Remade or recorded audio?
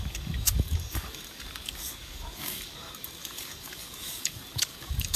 remade